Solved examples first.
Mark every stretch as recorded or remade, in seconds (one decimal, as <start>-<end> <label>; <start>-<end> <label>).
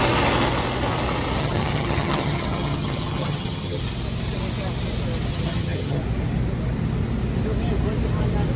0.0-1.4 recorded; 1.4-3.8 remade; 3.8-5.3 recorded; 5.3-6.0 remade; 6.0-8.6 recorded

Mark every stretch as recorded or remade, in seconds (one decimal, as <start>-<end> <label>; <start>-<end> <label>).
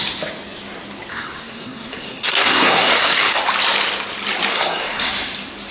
0.0-1.1 recorded; 1.1-3.4 remade; 3.4-4.5 recorded; 4.5-5.1 remade; 5.1-5.7 recorded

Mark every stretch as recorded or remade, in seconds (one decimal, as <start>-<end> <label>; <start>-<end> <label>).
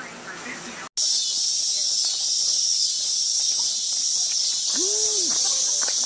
0.0-6.1 recorded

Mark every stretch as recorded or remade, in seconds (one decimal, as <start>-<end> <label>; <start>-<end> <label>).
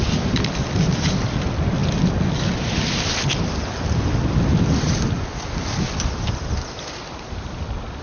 0.0-8.0 recorded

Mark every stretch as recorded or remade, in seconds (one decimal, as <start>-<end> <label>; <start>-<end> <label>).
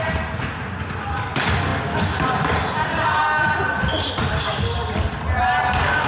0.0-6.1 recorded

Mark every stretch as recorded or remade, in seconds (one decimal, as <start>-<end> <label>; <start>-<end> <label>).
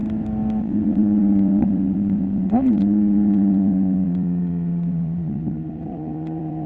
0.0-0.6 recorded; 0.6-6.7 remade